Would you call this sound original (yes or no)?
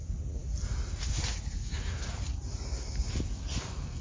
yes